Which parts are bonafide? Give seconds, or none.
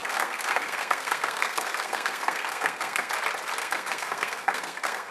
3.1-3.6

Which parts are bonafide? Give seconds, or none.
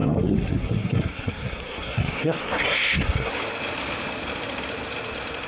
3.3-5.5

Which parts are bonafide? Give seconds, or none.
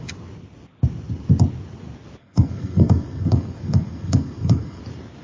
0.0-2.2; 4.8-5.2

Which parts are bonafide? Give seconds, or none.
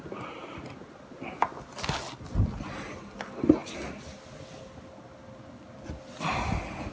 0.0-6.9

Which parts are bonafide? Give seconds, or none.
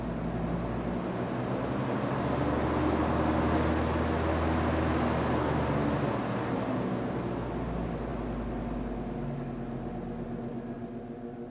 0.0-11.5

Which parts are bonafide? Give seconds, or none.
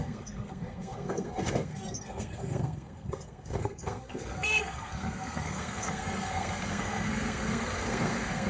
none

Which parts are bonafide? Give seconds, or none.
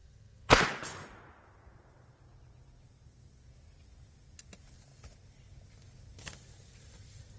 0.6-7.4